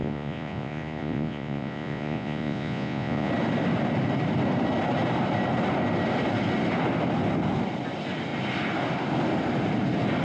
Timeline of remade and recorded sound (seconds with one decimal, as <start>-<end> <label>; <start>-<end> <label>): 0.0-3.3 remade; 3.3-10.2 recorded